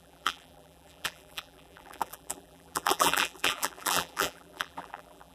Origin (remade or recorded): remade